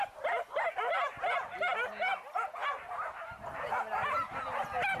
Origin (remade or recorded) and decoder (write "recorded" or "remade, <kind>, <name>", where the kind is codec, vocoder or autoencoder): recorded